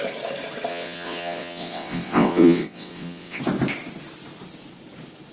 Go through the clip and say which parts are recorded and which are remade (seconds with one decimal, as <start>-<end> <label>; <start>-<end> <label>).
0.0-0.7 recorded; 0.7-3.4 remade; 3.4-5.3 recorded